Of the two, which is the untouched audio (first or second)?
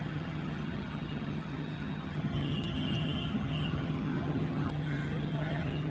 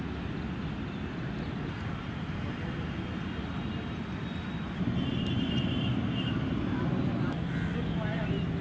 second